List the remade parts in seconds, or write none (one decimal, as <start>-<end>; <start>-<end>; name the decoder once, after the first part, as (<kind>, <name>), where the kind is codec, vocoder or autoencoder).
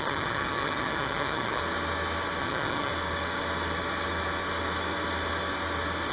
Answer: 0.0-1.6 (vocoder, HiFi-GAN); 2.4-2.9